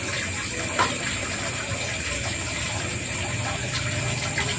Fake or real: real